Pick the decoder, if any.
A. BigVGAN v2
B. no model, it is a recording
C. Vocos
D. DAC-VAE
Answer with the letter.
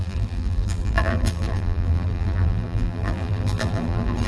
A